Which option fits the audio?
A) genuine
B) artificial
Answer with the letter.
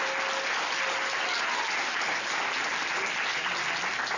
A